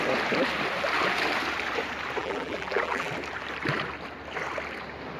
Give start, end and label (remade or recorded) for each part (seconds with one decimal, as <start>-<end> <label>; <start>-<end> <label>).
0.0-2.2 recorded; 2.2-3.1 remade; 3.1-5.2 recorded